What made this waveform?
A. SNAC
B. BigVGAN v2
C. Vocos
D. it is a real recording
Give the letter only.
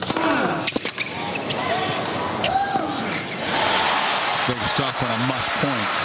D